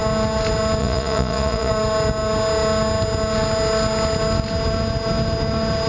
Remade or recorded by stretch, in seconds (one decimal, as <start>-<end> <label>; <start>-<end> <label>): 0.0-0.8 recorded; 0.8-1.7 remade; 1.7-5.9 recorded